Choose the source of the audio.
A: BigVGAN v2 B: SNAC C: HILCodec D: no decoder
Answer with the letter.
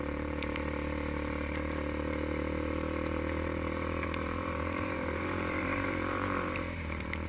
A